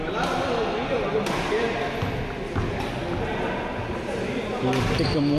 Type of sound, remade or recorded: recorded